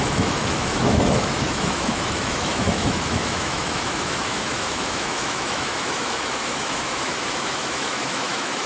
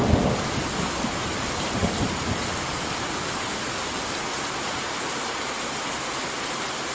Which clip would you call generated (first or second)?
first